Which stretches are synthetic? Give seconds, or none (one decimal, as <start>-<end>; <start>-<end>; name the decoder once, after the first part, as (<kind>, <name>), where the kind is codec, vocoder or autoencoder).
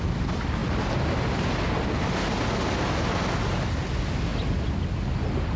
none